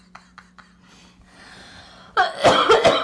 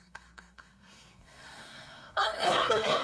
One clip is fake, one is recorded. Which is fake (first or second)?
second